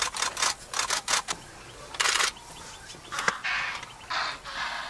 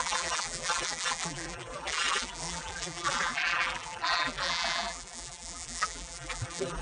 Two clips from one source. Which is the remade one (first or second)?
second